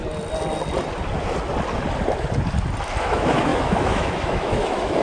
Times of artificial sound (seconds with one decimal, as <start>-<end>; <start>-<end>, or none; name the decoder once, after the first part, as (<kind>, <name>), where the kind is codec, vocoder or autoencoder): 3.0-5.0 (autoencoder, DAC-VAE)